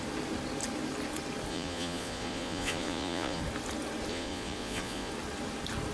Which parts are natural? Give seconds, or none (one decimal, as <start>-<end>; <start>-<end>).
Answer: 0.0-1.5; 3.4-4.1; 5.1-5.9